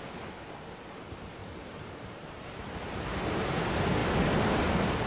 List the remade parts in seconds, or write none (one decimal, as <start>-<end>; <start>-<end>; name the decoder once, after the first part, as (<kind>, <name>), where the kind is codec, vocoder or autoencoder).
1.4-3.2 (vocoder, BigVGAN v2)